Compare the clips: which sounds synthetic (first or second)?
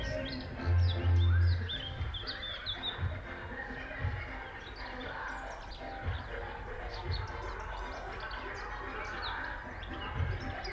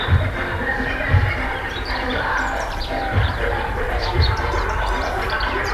second